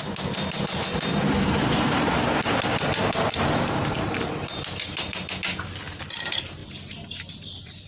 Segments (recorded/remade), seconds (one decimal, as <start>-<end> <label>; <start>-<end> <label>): 0.0-7.9 recorded